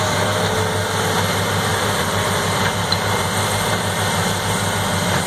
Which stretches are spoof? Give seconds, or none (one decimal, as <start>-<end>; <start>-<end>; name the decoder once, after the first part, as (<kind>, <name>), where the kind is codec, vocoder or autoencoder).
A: 1.7-5.3 (vocoder, BigVGAN v2)